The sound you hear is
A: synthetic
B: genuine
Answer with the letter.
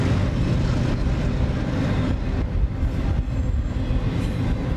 B